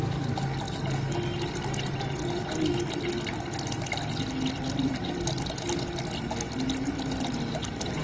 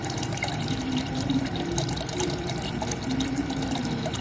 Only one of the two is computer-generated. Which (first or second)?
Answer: second